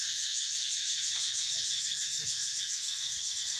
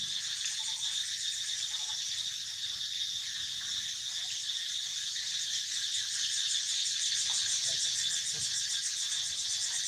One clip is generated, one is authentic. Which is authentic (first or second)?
second